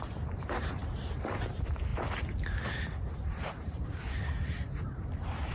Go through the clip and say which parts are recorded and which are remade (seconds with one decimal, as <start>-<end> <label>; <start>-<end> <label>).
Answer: 0.0-5.5 remade